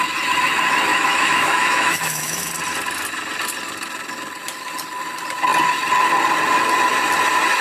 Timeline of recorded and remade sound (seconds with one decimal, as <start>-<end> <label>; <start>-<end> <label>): 0.0-0.9 recorded; 0.9-2.5 remade; 2.5-7.6 recorded